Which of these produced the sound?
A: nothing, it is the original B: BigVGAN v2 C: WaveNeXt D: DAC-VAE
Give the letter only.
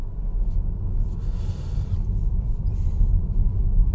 A